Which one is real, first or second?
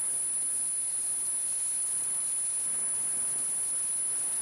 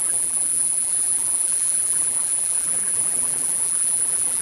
first